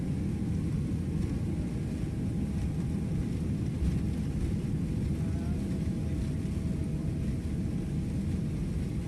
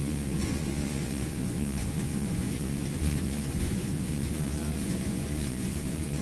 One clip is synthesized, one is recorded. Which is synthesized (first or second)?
second